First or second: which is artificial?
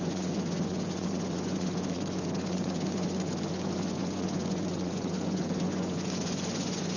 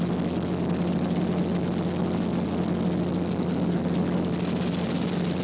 first